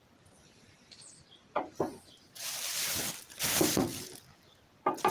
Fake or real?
real